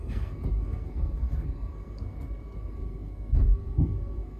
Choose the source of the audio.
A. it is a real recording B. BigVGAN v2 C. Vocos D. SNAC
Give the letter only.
D